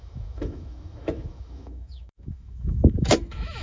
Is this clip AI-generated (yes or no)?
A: yes